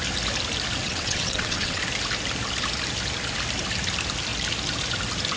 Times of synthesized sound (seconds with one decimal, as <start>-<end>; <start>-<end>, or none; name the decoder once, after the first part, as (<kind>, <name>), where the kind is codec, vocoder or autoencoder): 0.8-1.8 (vocoder, WaveNeXt)